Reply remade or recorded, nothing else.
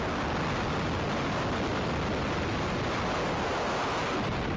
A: recorded